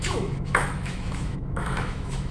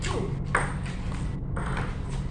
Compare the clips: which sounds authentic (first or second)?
second